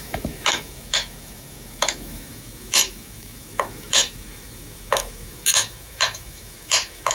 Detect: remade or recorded remade